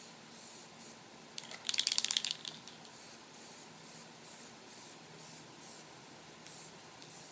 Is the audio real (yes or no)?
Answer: yes